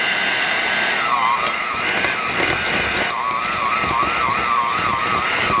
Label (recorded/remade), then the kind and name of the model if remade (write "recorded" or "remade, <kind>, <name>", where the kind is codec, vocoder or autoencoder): recorded